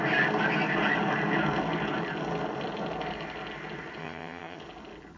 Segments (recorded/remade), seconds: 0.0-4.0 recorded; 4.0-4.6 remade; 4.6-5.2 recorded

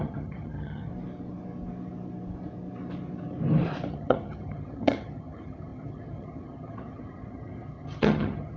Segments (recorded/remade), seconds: 0.0-0.9 remade; 0.9-3.9 recorded; 3.9-8.6 remade

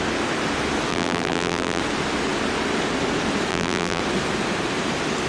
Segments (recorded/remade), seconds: 0.0-0.9 recorded; 0.9-1.8 remade; 1.8-3.5 recorded; 3.5-4.0 remade; 4.0-5.3 recorded

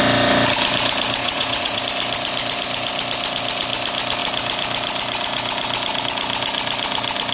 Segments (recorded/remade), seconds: 0.0-1.2 recorded; 1.2-1.8 remade; 1.8-7.3 recorded

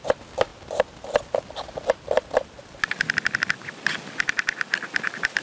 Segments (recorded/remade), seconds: 0.0-5.4 recorded

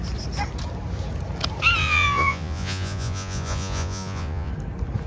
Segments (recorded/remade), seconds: 0.0-1.8 recorded; 1.8-4.5 remade; 4.5-5.1 recorded